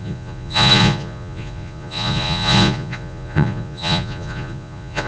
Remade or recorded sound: remade